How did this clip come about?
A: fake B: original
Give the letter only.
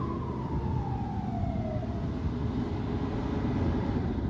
B